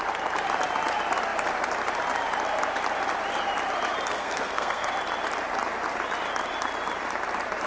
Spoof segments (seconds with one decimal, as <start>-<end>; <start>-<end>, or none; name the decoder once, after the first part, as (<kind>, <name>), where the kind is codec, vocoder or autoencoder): 4.1-4.9 (codec, SNAC)